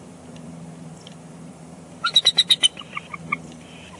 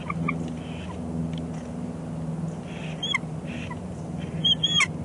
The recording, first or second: second